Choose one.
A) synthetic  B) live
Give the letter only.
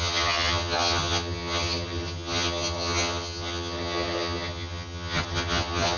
A